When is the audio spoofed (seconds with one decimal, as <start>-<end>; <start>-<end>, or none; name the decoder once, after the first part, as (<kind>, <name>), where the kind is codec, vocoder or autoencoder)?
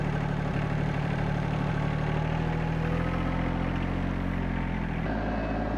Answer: 0.5-1.7 (vocoder, BigVGAN v2)